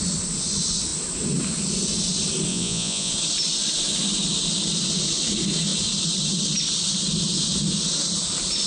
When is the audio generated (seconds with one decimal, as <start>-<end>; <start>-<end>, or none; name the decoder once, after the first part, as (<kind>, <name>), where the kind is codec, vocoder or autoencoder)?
2.5-3.1 (vocoder, Vocos)